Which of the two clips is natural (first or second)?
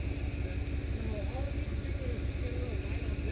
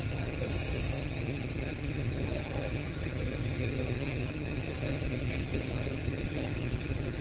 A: first